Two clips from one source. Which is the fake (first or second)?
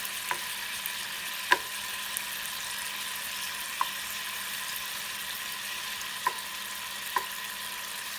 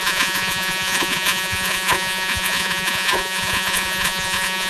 second